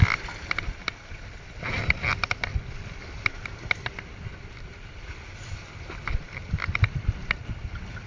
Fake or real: real